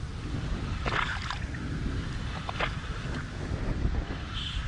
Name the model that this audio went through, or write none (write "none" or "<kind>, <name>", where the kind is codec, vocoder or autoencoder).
none